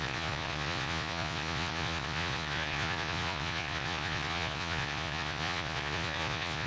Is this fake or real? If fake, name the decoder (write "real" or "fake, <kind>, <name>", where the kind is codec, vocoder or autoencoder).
fake, vocoder, Vocos